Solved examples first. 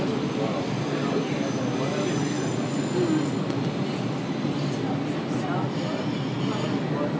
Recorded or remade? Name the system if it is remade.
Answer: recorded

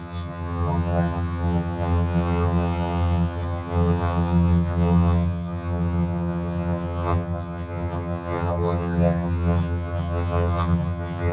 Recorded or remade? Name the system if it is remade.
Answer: remade, vocoder, HiFi-GAN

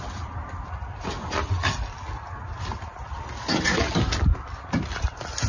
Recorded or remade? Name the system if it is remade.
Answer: recorded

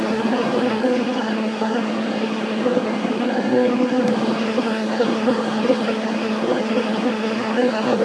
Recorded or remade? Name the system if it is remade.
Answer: remade, codec, SNAC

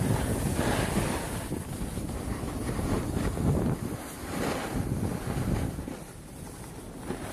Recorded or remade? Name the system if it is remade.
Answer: recorded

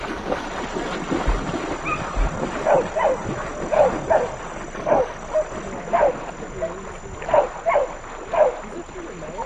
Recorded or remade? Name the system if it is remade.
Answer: recorded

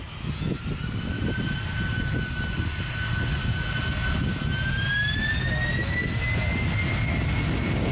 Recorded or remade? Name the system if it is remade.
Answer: recorded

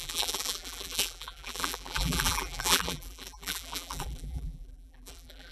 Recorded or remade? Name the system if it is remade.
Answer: remade, vocoder, BigVGAN v2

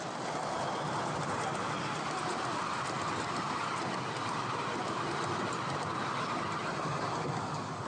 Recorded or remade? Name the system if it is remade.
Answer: recorded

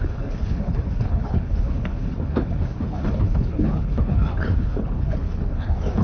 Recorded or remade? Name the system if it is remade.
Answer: remade, codec, HILCodec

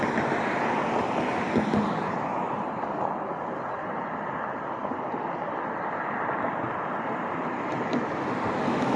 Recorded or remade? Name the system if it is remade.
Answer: recorded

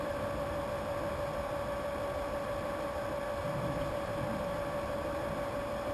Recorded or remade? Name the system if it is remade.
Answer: recorded